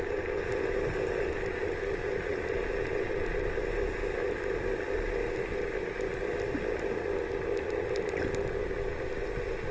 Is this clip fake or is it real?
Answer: real